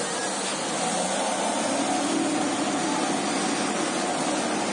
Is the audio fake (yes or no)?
no